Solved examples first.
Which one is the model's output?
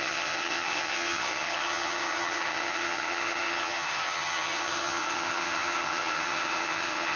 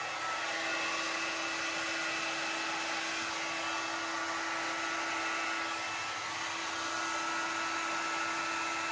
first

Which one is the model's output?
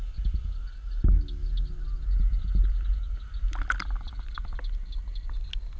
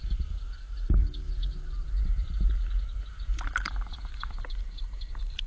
second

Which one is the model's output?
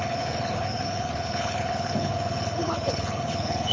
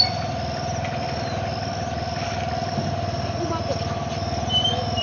first